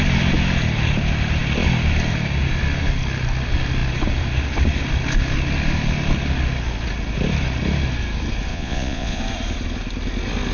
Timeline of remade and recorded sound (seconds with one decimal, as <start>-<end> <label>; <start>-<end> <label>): 0.0-8.5 recorded; 8.5-9.2 remade; 9.2-10.5 recorded